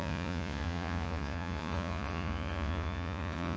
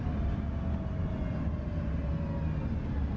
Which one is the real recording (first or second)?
second